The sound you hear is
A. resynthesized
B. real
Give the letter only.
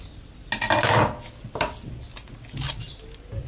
B